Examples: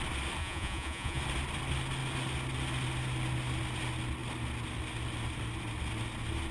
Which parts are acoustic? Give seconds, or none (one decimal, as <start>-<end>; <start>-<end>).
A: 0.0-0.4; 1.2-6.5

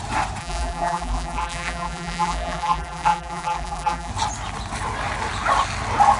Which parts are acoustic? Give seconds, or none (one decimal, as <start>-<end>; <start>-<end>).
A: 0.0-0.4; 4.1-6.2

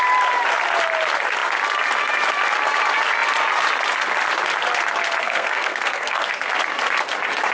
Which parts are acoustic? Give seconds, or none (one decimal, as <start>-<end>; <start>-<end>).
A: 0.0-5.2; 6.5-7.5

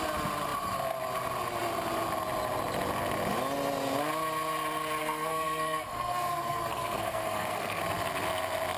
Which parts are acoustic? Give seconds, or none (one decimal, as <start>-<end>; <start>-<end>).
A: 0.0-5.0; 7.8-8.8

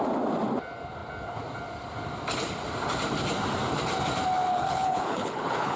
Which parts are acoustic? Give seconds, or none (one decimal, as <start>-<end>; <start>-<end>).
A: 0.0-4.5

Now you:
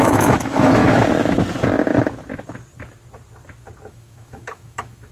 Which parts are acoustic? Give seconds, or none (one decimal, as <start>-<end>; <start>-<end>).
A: 0.8-3.9

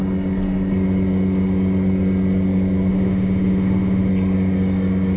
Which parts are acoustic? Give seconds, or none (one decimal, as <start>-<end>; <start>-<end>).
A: 0.0-2.9; 4.1-5.2

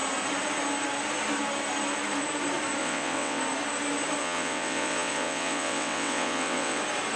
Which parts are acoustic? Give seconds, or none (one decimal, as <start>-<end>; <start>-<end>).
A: 0.0-2.8; 3.4-4.2; 6.8-7.2